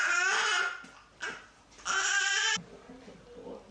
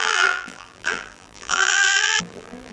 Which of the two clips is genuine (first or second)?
first